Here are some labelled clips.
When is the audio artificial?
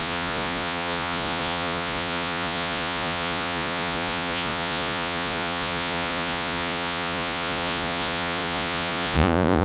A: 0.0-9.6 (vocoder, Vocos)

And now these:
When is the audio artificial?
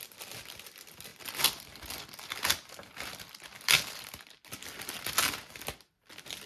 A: none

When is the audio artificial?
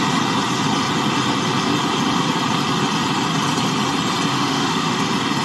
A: 4.3-5.0 (autoencoder, DAC-VAE)